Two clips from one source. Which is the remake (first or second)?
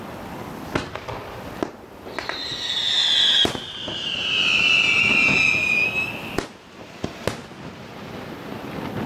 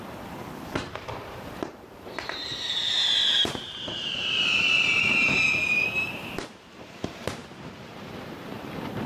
second